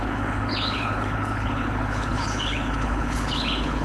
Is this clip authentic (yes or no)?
no